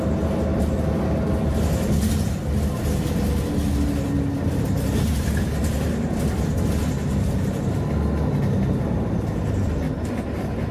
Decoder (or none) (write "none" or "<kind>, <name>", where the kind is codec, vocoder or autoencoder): none